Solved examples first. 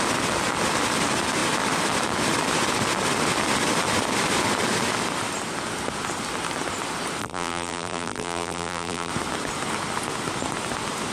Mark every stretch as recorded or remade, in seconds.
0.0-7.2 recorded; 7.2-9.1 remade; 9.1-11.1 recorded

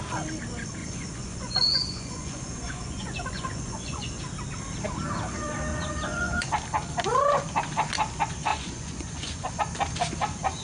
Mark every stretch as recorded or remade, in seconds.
0.0-0.8 recorded; 0.8-4.2 remade; 4.2-5.7 recorded; 5.7-6.5 remade; 6.5-8.5 recorded; 8.5-9.5 remade; 9.5-10.6 recorded